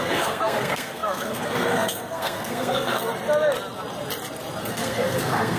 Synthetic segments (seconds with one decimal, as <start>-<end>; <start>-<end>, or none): 0.0-3.1; 4.6-5.6